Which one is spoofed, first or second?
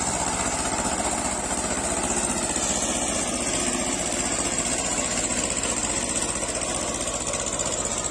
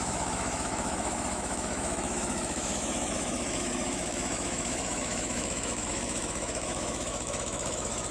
second